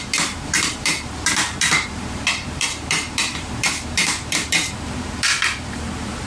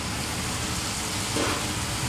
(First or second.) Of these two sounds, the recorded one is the second